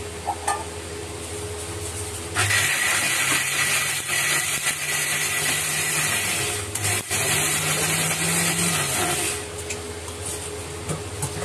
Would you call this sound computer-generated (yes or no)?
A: no